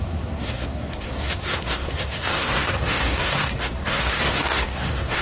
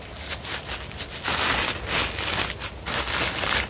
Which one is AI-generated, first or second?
first